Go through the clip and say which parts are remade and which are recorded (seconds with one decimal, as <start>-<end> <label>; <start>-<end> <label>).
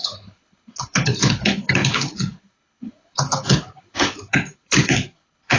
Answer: 0.0-5.6 remade